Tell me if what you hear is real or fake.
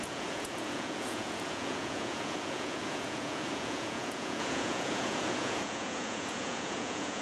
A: fake